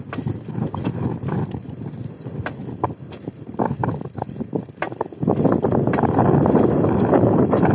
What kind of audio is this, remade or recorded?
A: recorded